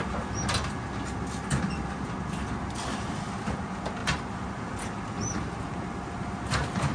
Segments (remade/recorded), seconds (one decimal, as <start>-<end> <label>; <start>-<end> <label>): 0.0-6.9 recorded